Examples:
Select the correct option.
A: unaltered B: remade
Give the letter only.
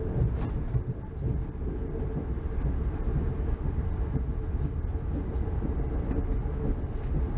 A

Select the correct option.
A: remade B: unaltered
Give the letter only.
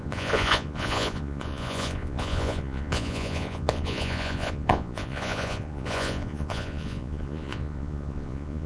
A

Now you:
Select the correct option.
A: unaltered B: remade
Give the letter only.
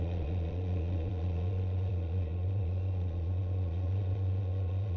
B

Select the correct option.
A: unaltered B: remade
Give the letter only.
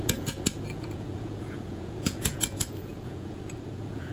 B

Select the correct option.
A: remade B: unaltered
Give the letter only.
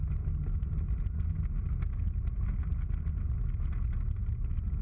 B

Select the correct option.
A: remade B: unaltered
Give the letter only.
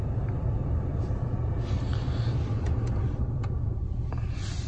B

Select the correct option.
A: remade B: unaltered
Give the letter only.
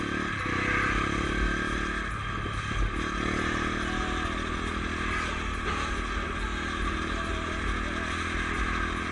B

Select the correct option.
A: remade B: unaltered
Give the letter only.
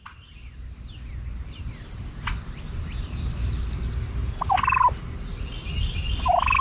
B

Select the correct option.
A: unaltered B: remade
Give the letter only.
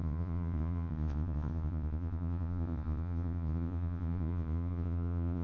B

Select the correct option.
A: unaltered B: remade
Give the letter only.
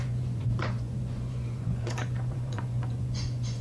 B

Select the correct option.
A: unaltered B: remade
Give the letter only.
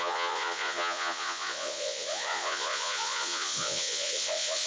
B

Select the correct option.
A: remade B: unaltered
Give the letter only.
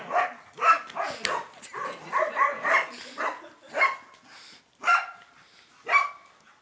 B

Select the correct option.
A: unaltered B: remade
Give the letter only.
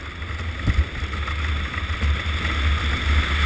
A